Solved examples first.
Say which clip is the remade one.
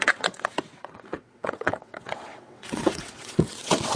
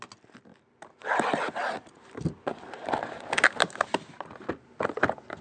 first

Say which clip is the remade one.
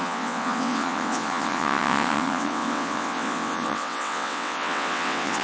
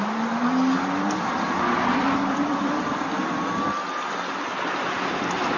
first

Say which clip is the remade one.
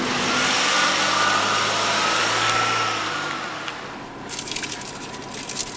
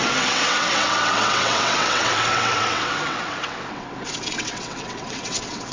second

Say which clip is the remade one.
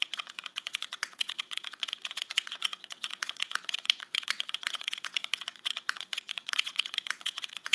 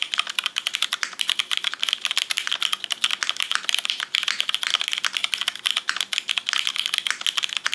first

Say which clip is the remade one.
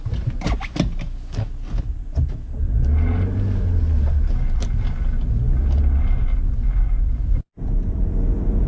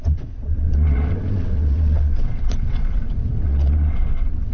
second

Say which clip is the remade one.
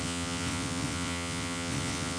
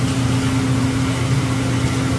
first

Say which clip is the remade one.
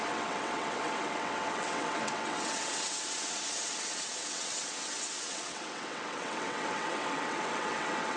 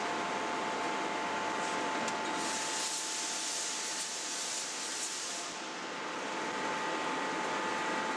first